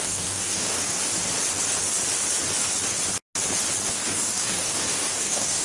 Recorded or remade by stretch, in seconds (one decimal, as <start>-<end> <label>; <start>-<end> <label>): 0.0-1.0 remade; 1.0-3.9 recorded; 3.9-5.6 remade

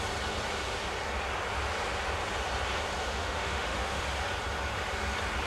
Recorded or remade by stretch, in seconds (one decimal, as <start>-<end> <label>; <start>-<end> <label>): 0.0-3.0 recorded; 3.0-4.0 remade; 4.0-5.5 recorded